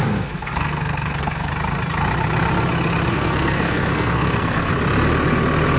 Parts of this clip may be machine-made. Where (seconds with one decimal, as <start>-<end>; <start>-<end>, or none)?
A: 0.0-1.5; 3.1-4.7